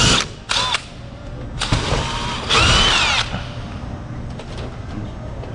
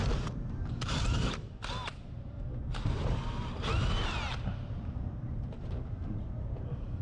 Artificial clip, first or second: second